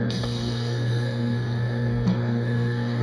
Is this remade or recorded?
remade